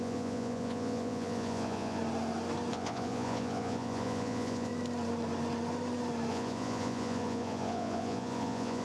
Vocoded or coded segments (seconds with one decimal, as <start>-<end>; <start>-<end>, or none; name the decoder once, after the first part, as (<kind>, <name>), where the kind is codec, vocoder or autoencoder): 0.0-2.0 (vocoder, Vocos); 2.7-4.7; 6.3-8.8